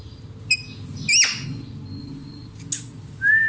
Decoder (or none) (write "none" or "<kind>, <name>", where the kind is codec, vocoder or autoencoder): none